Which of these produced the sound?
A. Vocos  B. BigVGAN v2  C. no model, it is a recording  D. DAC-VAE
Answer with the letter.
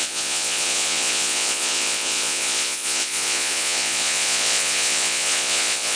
A